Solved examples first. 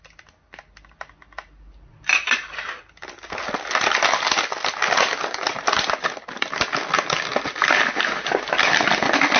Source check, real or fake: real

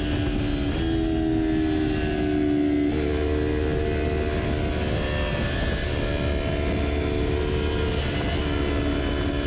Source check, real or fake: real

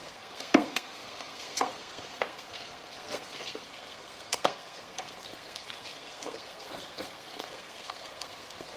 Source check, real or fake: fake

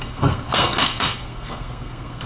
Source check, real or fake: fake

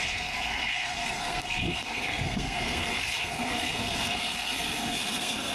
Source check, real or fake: fake